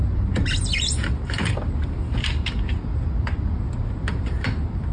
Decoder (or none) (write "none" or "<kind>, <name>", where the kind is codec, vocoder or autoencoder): none